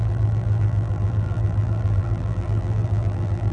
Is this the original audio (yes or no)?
no